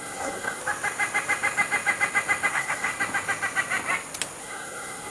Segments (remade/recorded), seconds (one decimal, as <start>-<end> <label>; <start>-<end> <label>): 0.0-0.6 remade; 0.6-2.5 recorded; 2.5-2.9 remade; 2.9-4.4 recorded; 4.4-5.1 remade